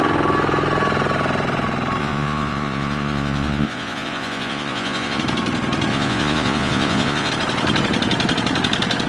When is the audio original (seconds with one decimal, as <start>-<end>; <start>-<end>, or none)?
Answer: 0.0-2.0; 5.2-5.9; 7.3-9.1